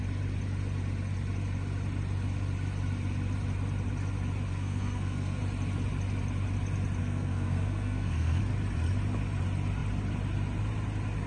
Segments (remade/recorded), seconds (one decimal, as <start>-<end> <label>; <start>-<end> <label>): 0.0-4.5 recorded; 4.5-5.4 remade; 5.4-7.0 recorded; 7.0-8.4 remade; 8.4-11.3 recorded